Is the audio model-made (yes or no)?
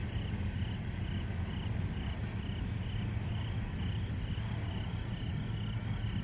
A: no